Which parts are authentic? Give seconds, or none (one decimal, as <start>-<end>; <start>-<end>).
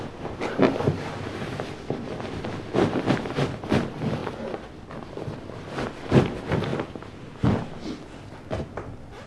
0.0-9.3